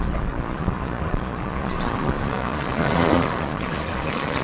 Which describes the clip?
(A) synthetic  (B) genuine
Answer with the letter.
A